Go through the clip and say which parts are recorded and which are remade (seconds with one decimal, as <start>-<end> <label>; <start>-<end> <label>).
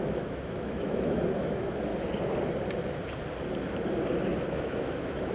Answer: 0.0-1.9 remade; 1.9-4.5 recorded; 4.5-5.3 remade